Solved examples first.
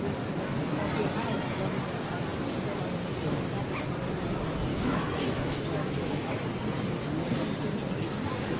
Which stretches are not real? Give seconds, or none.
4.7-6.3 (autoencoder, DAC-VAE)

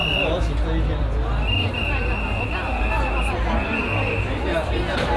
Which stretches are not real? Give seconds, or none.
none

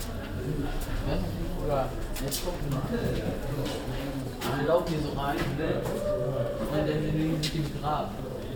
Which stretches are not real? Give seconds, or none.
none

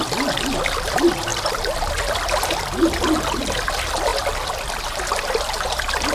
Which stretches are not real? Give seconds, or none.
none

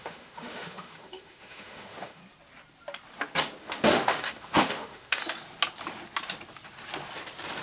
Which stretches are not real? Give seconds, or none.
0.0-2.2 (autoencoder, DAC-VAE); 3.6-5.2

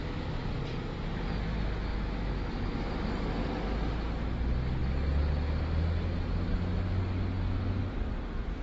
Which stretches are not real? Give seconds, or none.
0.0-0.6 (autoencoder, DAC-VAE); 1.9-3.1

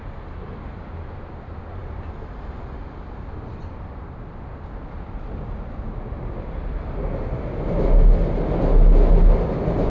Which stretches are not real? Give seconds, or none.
none

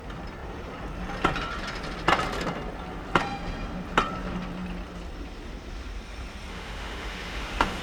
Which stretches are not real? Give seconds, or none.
6.5-7.8 (autoencoder, DAC-VAE)